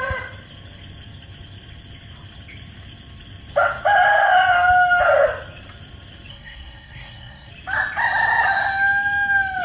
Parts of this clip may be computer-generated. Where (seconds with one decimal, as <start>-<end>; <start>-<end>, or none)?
6.3-7.5